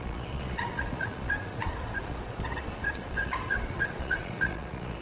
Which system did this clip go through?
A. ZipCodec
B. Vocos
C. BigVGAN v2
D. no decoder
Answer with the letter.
B